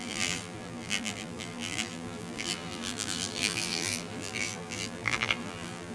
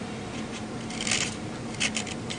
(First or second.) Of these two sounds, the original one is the second